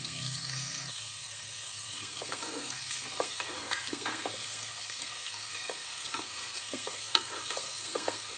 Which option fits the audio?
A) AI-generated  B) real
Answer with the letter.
A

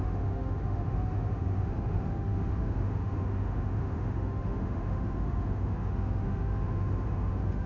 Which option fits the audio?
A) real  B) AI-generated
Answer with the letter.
B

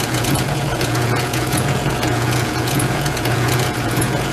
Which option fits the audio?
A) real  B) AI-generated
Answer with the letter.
B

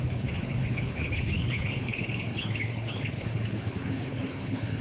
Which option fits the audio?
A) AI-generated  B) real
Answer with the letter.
A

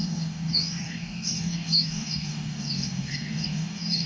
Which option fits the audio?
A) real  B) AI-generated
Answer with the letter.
B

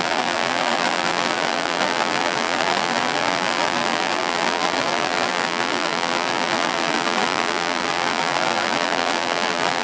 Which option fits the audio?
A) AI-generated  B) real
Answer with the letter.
A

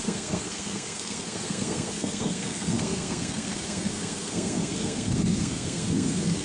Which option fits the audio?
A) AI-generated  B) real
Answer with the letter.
A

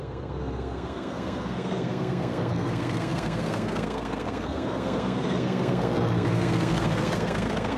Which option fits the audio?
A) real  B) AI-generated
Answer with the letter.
B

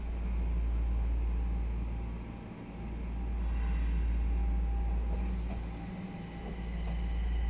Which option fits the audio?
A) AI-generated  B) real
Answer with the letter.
B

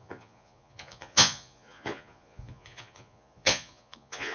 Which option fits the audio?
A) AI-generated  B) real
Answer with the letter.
A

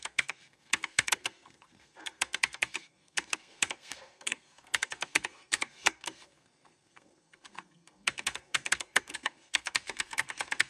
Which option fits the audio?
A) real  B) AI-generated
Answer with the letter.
B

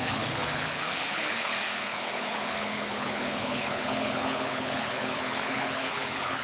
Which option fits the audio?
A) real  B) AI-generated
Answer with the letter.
B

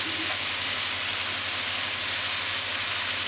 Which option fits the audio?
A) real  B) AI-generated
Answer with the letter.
A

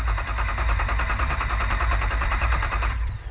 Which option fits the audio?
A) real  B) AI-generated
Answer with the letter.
B